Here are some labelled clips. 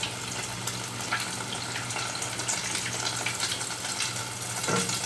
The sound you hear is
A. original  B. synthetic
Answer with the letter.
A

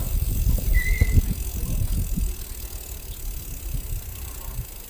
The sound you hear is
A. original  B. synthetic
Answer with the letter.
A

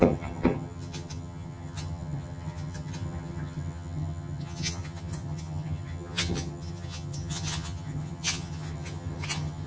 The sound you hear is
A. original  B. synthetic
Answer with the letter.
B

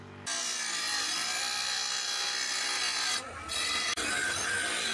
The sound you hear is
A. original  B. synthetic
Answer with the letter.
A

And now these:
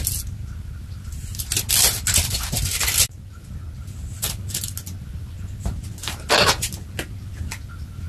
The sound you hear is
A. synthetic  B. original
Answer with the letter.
B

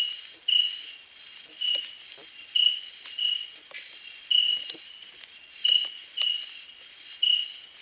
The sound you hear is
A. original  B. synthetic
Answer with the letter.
A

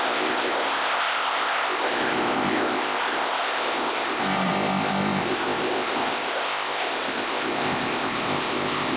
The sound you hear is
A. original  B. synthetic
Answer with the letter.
B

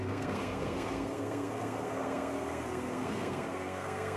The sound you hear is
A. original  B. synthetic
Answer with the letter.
B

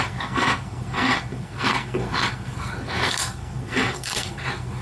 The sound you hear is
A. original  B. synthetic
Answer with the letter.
B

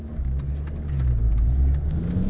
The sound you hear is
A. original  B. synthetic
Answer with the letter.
A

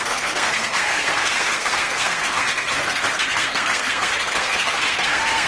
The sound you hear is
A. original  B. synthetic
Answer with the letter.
B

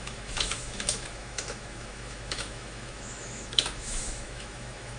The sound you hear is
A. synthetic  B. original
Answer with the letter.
A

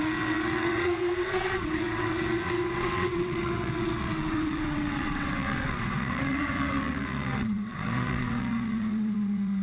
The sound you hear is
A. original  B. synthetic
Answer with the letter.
B